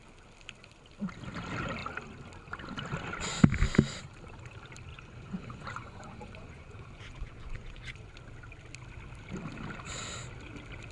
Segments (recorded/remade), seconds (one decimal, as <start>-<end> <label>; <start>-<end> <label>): 0.0-4.9 recorded; 4.9-8.1 remade; 8.1-10.9 recorded